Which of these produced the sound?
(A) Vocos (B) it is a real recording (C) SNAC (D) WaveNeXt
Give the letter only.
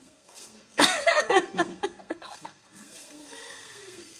C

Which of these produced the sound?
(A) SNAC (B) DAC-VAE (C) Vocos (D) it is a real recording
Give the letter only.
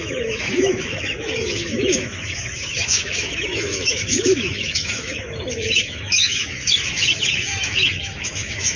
B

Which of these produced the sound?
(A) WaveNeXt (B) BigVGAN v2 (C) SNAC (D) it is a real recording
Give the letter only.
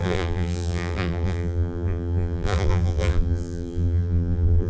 B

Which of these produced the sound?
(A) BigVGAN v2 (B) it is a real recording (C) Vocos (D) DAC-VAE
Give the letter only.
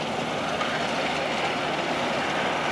B